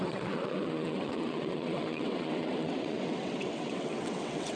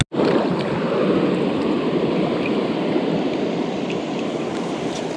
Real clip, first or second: second